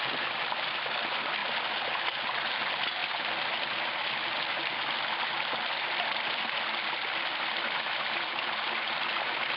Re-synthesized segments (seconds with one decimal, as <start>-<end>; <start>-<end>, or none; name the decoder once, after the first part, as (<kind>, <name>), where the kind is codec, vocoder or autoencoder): none